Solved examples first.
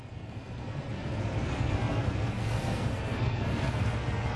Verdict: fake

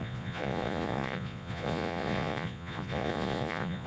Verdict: fake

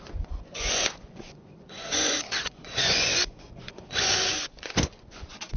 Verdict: fake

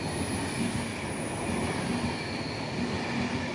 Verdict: real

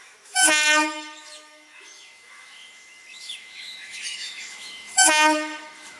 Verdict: fake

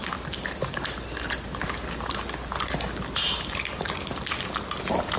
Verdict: real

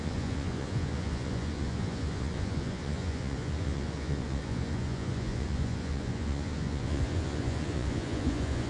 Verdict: fake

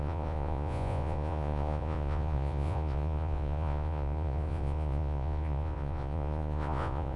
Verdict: fake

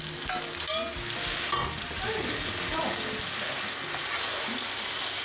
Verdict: real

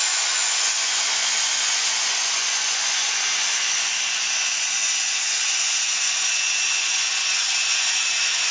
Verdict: fake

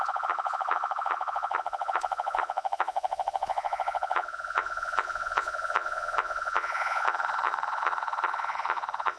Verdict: fake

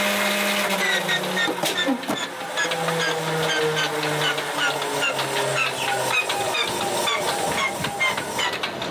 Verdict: real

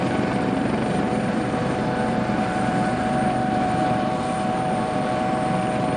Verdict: fake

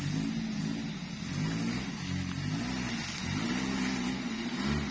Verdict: real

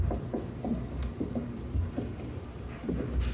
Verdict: real